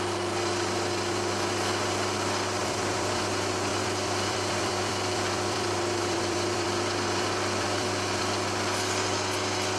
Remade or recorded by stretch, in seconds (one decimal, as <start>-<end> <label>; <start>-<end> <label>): 0.0-2.6 recorded; 2.6-3.2 remade; 3.2-3.7 recorded; 3.7-8.2 remade; 8.2-9.8 recorded